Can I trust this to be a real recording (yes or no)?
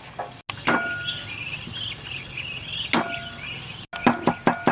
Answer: yes